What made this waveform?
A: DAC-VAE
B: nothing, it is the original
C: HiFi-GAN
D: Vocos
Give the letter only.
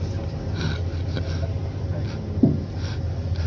B